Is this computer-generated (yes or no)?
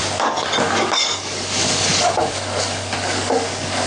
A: yes